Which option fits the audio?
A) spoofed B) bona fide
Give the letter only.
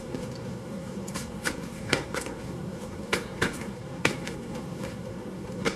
A